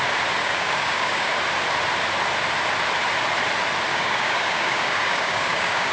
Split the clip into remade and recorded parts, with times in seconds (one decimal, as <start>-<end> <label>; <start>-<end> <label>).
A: 0.0-0.4 recorded; 0.4-1.3 remade; 1.3-3.9 recorded; 3.9-5.9 remade